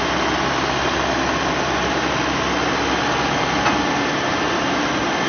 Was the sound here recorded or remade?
recorded